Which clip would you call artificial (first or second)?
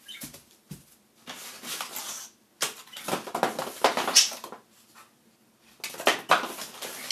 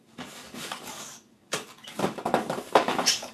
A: second